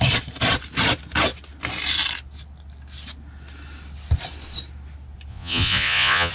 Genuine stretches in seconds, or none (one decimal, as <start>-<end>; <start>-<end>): 0.0-5.3